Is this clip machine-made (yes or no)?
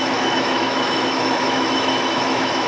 yes